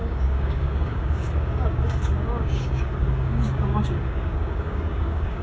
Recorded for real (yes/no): no